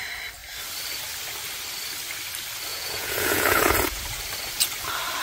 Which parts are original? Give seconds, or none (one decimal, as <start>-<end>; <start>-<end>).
0.0-2.7; 4.0-5.2